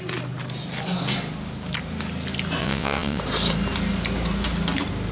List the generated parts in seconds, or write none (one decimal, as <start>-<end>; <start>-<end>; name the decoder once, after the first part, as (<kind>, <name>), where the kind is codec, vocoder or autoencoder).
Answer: 2.6-3.2 (vocoder, WaveNeXt)